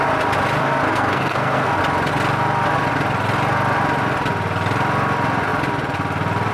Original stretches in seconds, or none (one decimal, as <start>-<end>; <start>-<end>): 0.0-0.9; 1.8-6.5